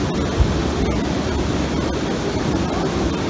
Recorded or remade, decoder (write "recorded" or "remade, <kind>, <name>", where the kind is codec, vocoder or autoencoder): recorded